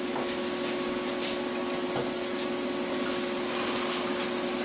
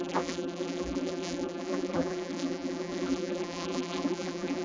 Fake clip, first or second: second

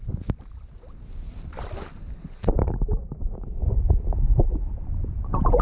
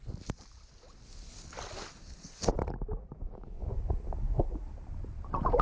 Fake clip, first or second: first